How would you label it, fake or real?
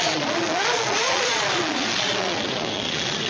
fake